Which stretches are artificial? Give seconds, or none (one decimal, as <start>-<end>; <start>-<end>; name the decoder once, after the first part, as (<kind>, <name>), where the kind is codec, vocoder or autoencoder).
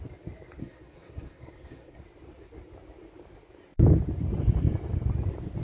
0.6-2.0 (codec, SNAC)